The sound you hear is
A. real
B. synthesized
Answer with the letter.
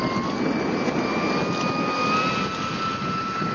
A